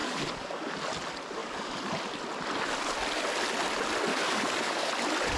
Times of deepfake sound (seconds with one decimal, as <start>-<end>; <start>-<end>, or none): 0.0-0.7; 1.4-1.9; 4.1-4.9